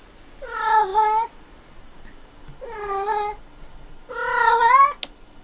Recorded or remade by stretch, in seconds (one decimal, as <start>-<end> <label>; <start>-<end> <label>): 0.0-5.4 recorded